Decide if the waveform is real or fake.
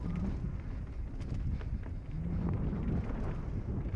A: real